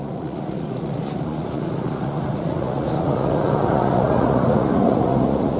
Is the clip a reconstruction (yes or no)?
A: yes